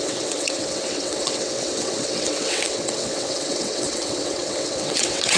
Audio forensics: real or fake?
fake